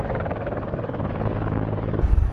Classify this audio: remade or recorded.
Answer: remade